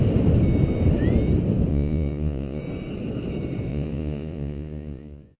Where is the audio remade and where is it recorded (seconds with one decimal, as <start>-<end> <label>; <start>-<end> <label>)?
0.0-1.7 recorded; 1.7-2.6 remade; 2.6-3.7 recorded; 3.7-5.4 remade